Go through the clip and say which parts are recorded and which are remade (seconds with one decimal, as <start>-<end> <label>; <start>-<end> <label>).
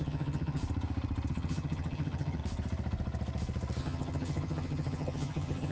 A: 0.0-0.6 remade; 0.6-1.3 recorded; 1.3-2.4 remade; 2.4-3.8 recorded; 3.8-5.7 remade